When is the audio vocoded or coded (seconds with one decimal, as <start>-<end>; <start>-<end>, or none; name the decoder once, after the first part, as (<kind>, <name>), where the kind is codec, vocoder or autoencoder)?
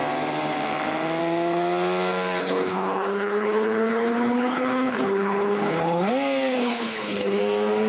2.4-6.1 (codec, HILCodec); 6.5-7.4